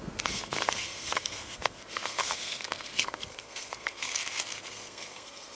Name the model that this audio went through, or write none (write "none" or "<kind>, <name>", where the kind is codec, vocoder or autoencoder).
codec, SNAC